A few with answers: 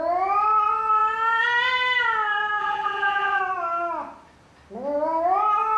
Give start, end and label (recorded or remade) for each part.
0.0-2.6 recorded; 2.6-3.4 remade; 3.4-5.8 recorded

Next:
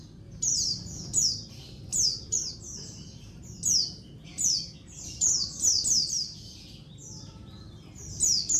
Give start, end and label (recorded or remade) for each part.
0.0-1.9 recorded; 1.9-2.5 remade; 2.5-4.3 recorded; 4.3-6.9 remade; 6.9-8.6 recorded

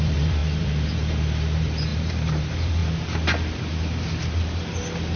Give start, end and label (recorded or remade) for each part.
0.0-2.8 remade; 2.8-5.2 recorded